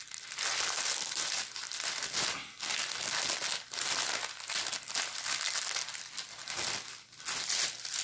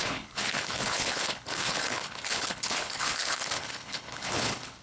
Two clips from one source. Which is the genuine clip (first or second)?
first